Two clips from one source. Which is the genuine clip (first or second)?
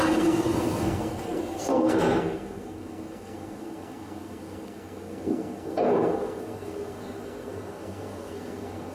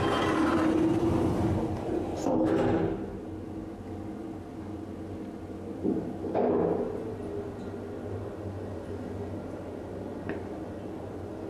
second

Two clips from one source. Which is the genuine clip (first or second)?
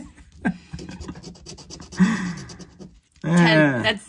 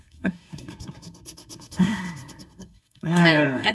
first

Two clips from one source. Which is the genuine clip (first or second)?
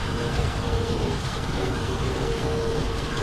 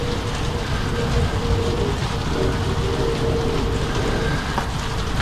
second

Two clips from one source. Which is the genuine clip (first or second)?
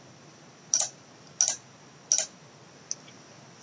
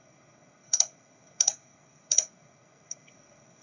first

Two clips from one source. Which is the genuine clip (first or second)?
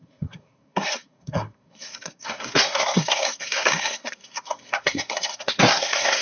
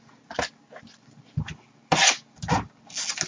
second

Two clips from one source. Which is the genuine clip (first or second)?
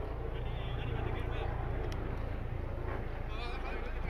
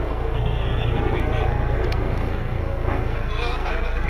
first